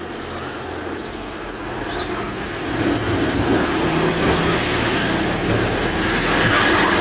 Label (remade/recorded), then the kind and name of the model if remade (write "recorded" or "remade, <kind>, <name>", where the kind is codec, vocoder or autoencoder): recorded